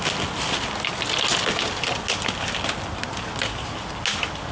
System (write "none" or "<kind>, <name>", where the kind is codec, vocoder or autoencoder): none